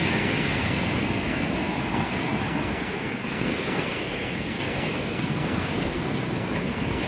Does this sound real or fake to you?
fake